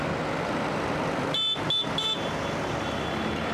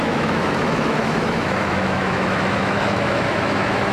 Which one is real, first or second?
first